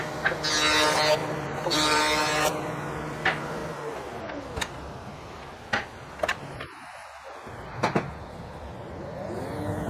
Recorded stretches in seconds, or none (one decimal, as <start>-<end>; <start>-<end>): 0.0-1.2; 2.0-3.6; 4.2-9.9